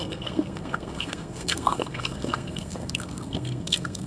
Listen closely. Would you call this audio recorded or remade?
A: remade